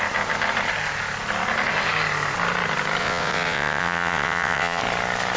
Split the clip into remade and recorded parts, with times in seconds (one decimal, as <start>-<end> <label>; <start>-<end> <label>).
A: 0.0-3.0 recorded; 3.0-4.8 remade; 4.8-5.4 recorded